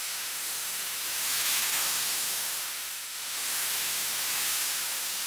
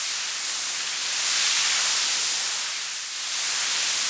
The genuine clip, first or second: second